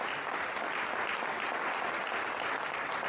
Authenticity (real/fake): real